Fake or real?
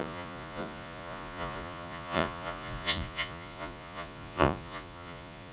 fake